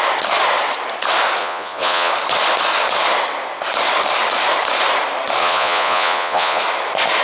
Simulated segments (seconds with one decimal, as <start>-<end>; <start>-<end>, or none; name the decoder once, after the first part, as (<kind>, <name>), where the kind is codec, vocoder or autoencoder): 1.4-2.1 (vocoder, Vocos); 5.4-6.6

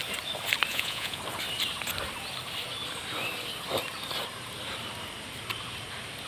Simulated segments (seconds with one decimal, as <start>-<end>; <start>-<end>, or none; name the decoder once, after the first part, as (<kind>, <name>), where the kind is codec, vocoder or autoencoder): 0.7-1.2 (vocoder, Vocos)

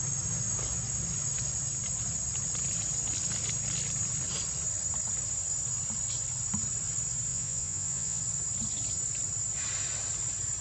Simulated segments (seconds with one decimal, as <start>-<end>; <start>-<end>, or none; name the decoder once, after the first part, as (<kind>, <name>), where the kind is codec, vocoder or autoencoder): 7.3-8.2 (vocoder, Vocos)

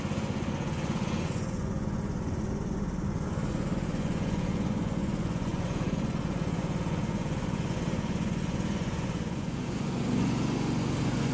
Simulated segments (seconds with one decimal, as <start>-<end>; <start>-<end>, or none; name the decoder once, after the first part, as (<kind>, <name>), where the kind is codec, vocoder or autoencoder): 0.0-11.3 (vocoder, Vocos)

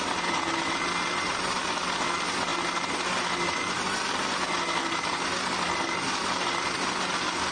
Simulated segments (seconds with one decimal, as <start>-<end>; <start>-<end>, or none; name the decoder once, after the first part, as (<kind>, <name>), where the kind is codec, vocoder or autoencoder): none